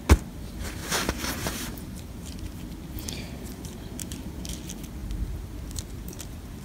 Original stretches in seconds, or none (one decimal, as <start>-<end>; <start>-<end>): 0.0-0.8; 2.6-4.0; 4.5-6.6